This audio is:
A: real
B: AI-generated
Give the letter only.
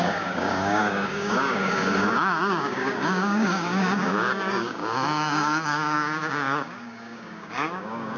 B